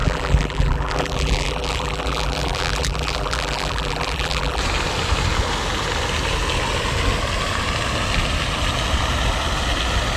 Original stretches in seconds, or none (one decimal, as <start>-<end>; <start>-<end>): 4.6-10.2